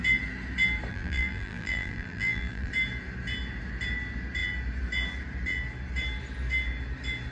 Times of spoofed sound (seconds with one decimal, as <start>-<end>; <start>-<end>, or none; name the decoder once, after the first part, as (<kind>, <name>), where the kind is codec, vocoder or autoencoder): 0.9-2.7 (vocoder, BigVGAN v2)

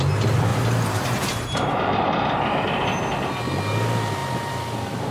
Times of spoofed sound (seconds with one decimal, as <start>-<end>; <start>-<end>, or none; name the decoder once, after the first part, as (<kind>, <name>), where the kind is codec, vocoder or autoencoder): 0.5-2.4 (vocoder, BigVGAN v2)

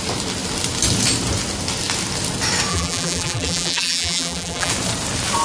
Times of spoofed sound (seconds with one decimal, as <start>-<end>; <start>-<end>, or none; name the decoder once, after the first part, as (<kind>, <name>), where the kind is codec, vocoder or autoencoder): 2.7-4.7 (vocoder, BigVGAN v2)